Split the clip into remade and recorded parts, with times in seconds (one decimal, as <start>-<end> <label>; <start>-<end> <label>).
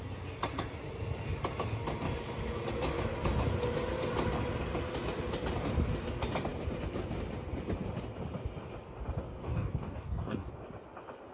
0.0-9.4 recorded; 9.4-10.5 remade; 10.5-11.3 recorded